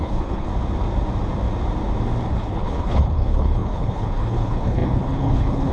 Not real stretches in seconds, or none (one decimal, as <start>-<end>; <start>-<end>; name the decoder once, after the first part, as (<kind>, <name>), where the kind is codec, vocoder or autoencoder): 0.0-0.5 (codec, HILCodec); 2.3-5.7